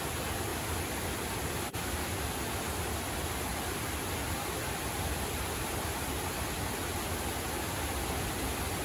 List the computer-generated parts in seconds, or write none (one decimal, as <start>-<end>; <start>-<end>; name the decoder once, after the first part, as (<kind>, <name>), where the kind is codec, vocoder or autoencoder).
none